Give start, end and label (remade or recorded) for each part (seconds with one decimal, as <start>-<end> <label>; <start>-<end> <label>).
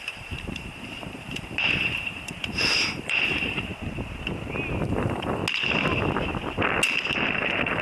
0.0-3.7 remade; 3.7-4.8 recorded; 4.8-5.4 remade; 5.4-7.3 recorded; 7.3-7.8 remade